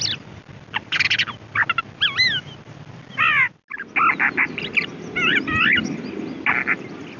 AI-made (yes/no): no